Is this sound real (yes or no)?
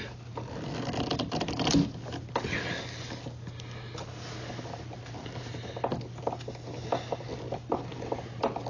yes